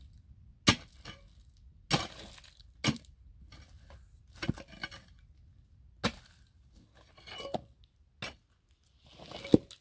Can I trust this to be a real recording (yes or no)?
yes